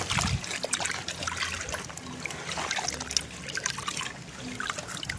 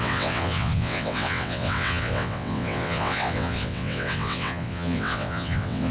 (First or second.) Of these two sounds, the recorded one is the first